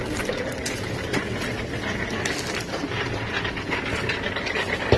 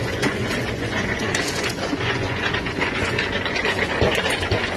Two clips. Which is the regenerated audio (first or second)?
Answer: second